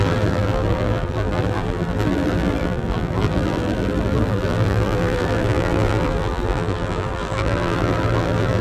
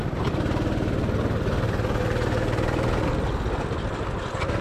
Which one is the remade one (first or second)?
first